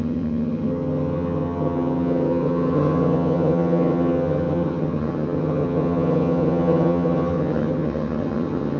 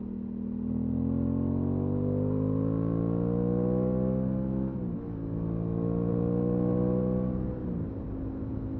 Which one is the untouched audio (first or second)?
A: second